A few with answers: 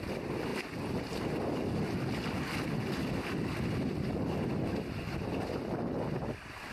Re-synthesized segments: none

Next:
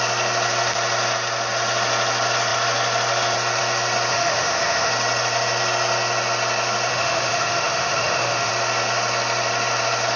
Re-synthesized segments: 4.1-4.9 (autoencoder, DAC-VAE); 6.9-8.5

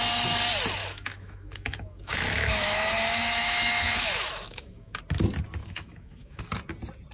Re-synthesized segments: 0.8-5.0 (autoencoder, DAC-VAE); 5.6-6.4